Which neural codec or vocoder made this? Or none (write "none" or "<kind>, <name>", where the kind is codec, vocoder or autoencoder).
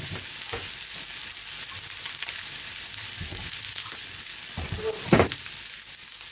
none